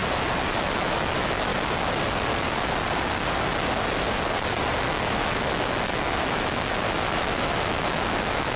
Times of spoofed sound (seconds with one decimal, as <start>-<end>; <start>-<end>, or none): 0.6-1.5; 4.8-8.6